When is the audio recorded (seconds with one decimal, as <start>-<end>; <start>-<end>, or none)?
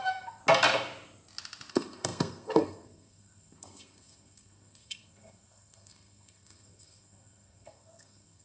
0.4-1.7